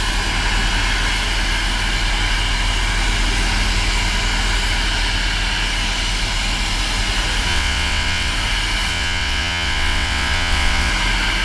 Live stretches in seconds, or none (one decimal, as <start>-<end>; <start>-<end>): 0.0-7.5; 8.3-8.9; 10.9-11.4